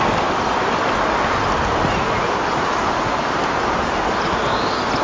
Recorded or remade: recorded